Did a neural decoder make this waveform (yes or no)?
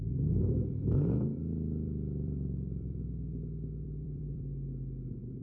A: yes